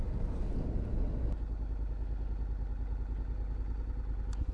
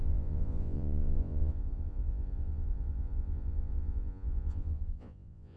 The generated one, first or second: second